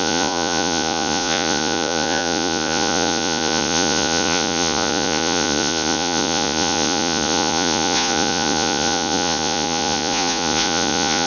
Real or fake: fake